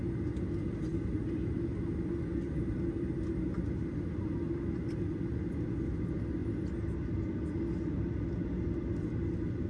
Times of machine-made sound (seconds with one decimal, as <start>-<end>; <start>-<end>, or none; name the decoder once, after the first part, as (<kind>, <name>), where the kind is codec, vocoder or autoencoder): none